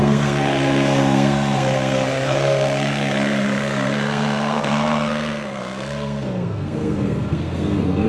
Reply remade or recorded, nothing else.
remade